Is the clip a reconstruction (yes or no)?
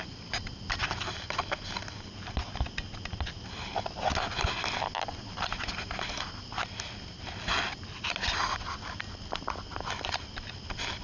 no